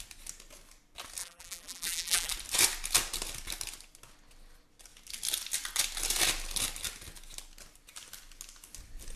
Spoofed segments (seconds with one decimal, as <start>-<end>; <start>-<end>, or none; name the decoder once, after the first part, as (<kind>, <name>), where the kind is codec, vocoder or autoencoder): 1.2-2.3 (vocoder, BigVGAN v2)